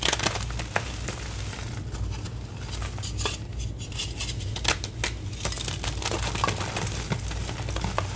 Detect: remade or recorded recorded